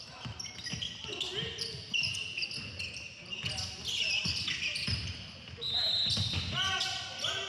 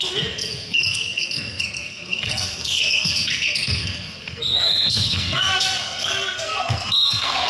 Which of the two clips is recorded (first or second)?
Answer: first